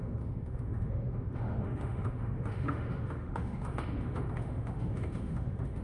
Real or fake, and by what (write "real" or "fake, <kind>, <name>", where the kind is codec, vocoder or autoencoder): fake, autoencoder, DAC-VAE